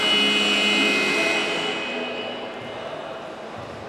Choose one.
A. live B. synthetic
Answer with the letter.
A